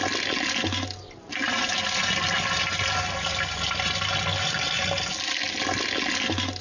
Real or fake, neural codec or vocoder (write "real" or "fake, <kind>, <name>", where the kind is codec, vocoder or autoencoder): real